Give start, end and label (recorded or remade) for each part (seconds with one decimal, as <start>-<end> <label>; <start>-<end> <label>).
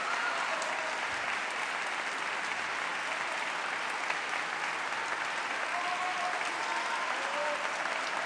0.0-8.3 recorded